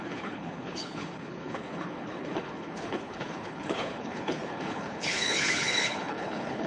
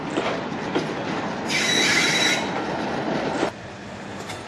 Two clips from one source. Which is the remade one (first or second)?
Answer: first